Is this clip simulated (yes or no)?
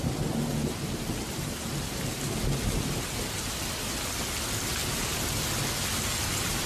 no